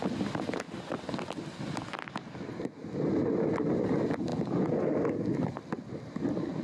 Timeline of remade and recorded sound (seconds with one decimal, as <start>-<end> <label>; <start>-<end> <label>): 0.0-6.6 recorded